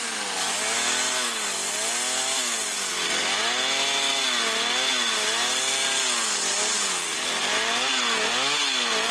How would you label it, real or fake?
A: real